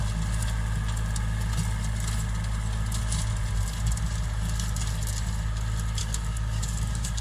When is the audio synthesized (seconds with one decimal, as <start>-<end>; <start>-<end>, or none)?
6.0-7.2